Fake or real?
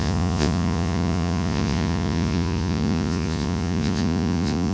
fake